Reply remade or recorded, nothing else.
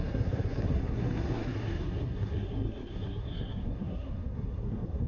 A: remade